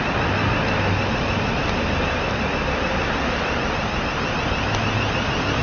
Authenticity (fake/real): real